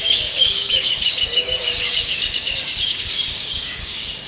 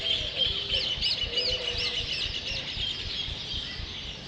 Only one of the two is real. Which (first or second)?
second